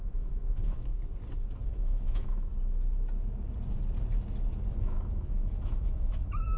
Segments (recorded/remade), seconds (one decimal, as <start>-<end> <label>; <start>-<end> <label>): 0.0-0.9 remade; 0.9-1.6 recorded; 1.6-2.5 remade; 2.5-4.8 recorded; 4.8-6.6 remade

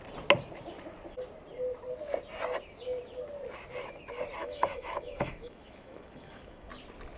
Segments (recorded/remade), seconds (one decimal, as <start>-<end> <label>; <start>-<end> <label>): 0.0-4.4 recorded; 4.4-6.7 remade; 6.7-7.2 recorded

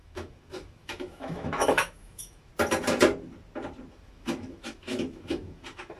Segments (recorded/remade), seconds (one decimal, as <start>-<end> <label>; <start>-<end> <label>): 0.0-2.5 remade; 2.5-3.9 recorded; 3.9-6.0 remade